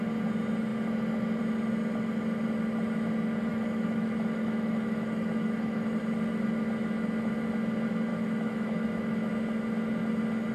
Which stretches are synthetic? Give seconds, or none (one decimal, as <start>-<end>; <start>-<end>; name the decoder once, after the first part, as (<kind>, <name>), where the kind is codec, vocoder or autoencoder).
3.5-6.0 (autoencoder, DAC-VAE); 8.1-9.3